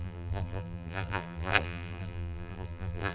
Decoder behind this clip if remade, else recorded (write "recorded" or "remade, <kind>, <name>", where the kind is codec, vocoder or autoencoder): remade, vocoder, BigVGAN v2